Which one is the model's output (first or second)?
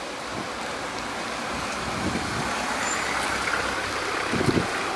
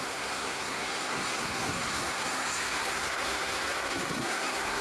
second